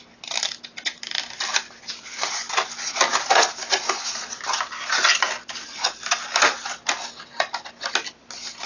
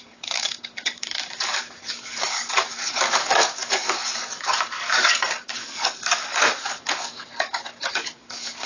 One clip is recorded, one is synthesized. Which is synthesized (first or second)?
second